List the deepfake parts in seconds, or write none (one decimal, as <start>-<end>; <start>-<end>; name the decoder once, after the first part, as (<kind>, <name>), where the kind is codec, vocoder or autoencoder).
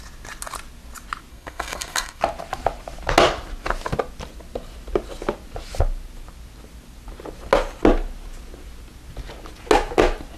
1.3-2.2 (codec, SNAC)